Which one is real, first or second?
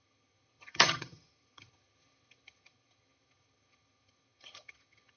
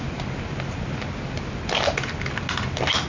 second